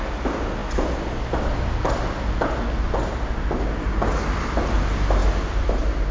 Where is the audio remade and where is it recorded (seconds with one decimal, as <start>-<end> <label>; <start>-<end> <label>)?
0.0-6.1 recorded